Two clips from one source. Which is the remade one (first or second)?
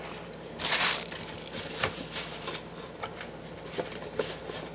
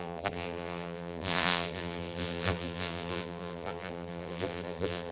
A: second